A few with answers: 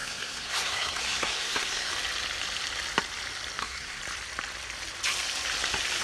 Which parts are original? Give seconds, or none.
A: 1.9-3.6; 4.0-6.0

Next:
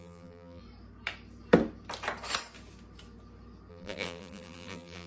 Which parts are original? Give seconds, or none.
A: 0.6-3.7

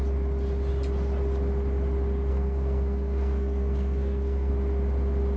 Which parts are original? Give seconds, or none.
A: 0.0-2.3; 4.5-5.4

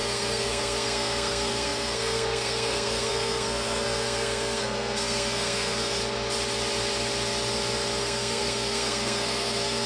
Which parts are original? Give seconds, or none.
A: 6.0-8.0

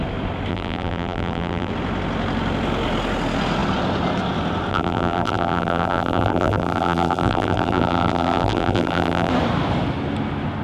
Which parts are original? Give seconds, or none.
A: 0.0-0.5; 1.7-4.7; 9.3-10.6